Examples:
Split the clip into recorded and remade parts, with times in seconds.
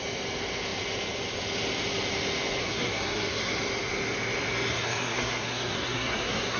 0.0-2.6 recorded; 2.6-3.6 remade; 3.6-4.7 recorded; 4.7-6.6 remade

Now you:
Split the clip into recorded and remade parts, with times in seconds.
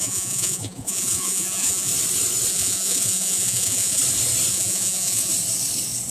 0.0-1.9 remade; 1.9-2.5 recorded; 2.5-4.0 remade; 4.0-4.5 recorded; 4.5-5.3 remade; 5.3-6.1 recorded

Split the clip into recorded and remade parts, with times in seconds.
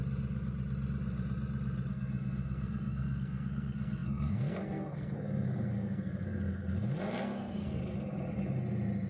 0.0-1.9 recorded; 1.9-6.6 remade; 6.6-7.2 recorded; 7.2-7.8 remade; 7.8-9.1 recorded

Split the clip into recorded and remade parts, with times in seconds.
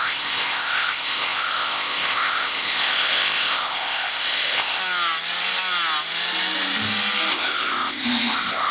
0.0-4.8 remade; 4.8-7.3 recorded; 7.3-8.7 remade